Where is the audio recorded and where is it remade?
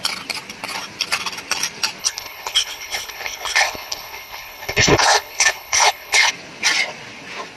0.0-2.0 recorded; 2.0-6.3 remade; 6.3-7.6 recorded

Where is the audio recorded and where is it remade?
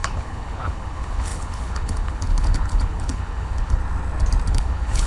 0.0-3.8 remade; 3.8-4.5 recorded; 4.5-5.1 remade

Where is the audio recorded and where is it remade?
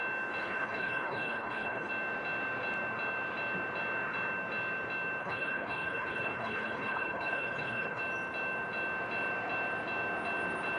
0.0-0.4 recorded; 0.4-1.9 remade; 1.9-5.2 recorded; 5.2-8.0 remade; 8.0-10.8 recorded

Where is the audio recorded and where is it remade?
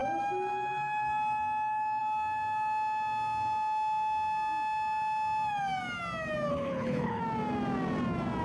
0.0-6.5 recorded; 6.5-7.2 remade; 7.2-8.4 recorded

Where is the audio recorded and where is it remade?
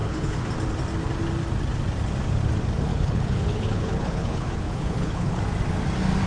0.0-0.5 remade; 0.5-2.9 recorded; 2.9-5.4 remade; 5.4-6.3 recorded